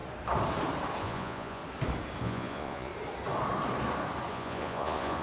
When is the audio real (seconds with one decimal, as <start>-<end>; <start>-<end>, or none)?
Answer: 0.0-1.0; 1.6-2.2; 2.9-4.3